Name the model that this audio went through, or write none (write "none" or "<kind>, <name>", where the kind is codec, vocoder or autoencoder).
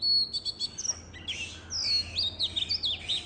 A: none